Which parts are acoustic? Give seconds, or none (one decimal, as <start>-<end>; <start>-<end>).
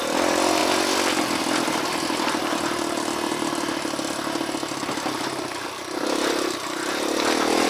0.0-7.7